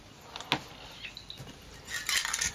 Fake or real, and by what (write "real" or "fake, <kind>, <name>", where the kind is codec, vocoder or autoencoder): real